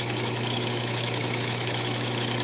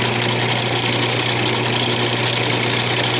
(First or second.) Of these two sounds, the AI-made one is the first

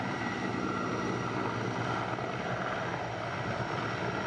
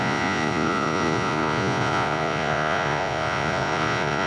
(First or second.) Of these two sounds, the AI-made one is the second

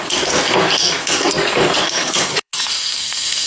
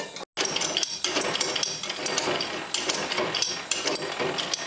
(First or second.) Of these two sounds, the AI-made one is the first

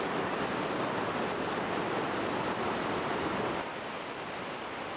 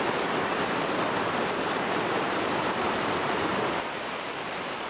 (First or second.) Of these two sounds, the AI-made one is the second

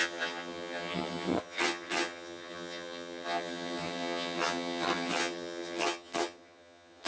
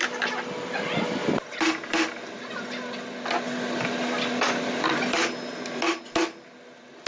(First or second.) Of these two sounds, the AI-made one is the first